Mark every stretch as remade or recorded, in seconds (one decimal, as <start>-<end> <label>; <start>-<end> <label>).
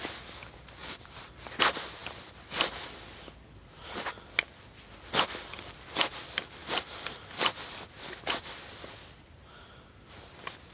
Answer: 0.0-10.7 recorded